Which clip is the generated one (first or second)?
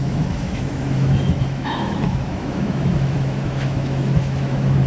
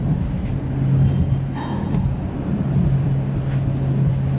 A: first